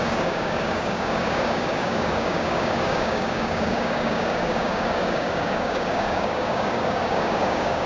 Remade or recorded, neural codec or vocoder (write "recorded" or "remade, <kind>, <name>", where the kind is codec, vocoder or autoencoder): remade, codec, DAC